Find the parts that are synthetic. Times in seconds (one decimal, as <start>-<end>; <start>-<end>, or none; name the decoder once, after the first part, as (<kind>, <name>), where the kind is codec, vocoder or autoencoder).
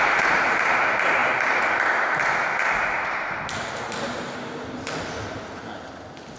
none